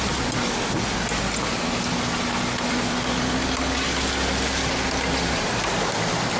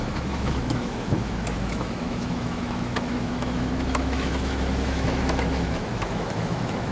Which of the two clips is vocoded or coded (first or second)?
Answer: second